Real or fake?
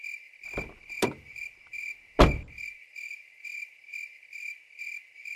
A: real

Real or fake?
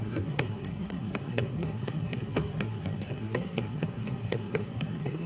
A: fake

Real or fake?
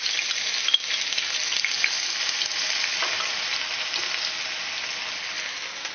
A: real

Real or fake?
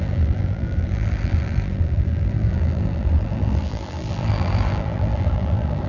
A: fake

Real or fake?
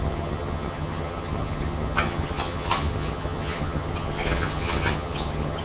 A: fake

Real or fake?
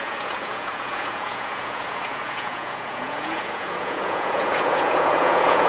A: fake